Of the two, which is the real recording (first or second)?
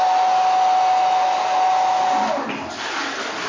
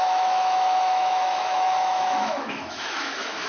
first